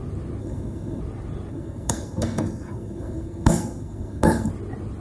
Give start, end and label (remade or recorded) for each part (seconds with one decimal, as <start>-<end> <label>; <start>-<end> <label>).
0.0-0.4 recorded; 0.4-1.0 remade; 1.0-1.5 recorded; 1.5-4.5 remade; 4.5-5.0 recorded